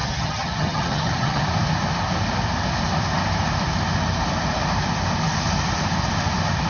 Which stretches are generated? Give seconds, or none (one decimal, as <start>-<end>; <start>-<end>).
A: 0.0-1.4